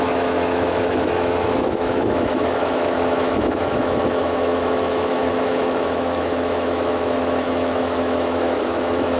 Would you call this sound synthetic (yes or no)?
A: yes